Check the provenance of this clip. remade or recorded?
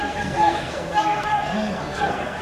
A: remade